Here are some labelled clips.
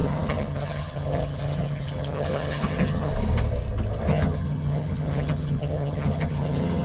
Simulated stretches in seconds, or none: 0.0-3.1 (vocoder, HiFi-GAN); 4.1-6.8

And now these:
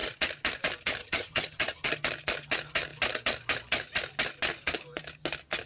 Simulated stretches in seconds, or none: 1.0-1.9 (vocoder, HiFi-GAN)

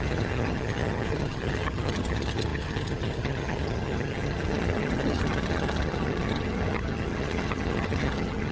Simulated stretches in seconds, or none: 0.0-8.5 (vocoder, HiFi-GAN)

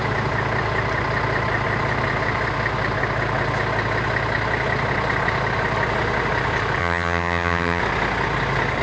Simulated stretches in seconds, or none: 6.8-7.8 (vocoder, HiFi-GAN)

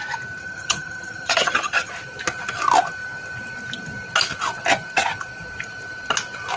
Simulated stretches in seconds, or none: 0.4-1.9 (vocoder, HiFi-GAN)

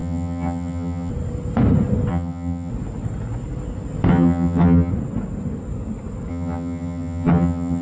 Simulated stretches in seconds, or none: 0.0-1.1 (vocoder, HiFi-GAN); 2.1-2.7; 4.1-4.9; 6.3-7.8

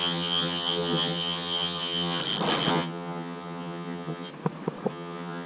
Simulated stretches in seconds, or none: 0.0-2.2 (vocoder, HiFi-GAN); 2.7-4.3; 4.9-5.5

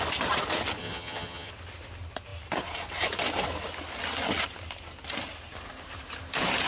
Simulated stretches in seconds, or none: 0.8-1.5 (vocoder, HiFi-GAN)